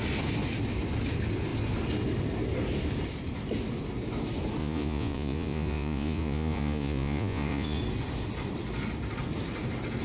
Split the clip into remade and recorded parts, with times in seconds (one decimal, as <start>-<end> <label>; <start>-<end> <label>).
0.0-4.6 recorded; 4.6-7.8 remade; 7.8-10.0 recorded